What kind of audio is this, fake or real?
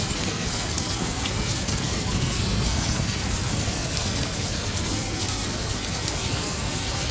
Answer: fake